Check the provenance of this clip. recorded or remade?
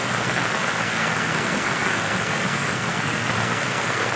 remade